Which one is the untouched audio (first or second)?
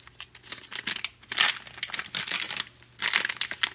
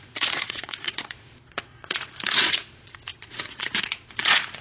first